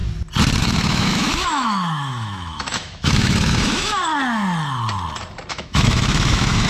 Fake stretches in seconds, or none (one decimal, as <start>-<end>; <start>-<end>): 0.6-4.0; 5.5-6.7